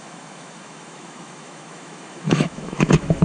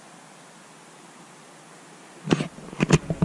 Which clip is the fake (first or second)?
first